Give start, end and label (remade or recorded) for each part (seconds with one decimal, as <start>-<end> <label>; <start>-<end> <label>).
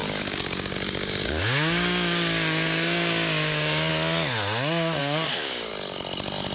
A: 0.0-3.9 remade; 3.9-5.0 recorded; 5.0-5.7 remade; 5.7-6.5 recorded